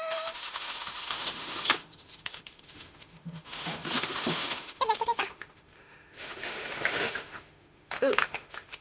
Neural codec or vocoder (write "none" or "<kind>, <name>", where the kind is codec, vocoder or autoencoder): autoencoder, DAC-VAE